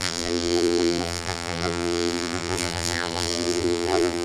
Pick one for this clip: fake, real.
fake